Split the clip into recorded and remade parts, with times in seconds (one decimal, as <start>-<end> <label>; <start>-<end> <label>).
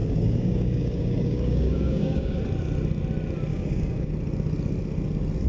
0.0-2.4 remade; 2.4-3.5 recorded; 3.5-4.1 remade; 4.1-5.5 recorded